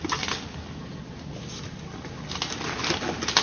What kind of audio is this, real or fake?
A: real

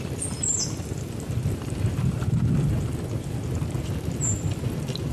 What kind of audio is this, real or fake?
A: real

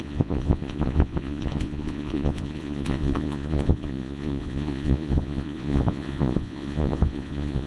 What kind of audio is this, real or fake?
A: fake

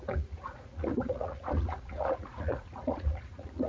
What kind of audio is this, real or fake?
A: fake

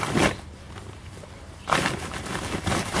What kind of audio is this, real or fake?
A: real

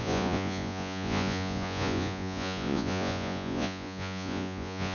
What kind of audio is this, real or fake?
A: fake